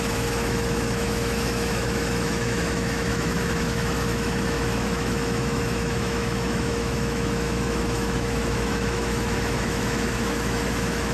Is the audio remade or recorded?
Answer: remade